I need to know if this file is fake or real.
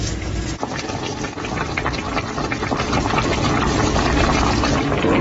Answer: real